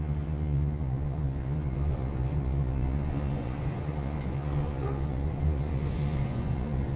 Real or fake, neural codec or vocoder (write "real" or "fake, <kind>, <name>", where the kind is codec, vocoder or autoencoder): fake, vocoder, Vocos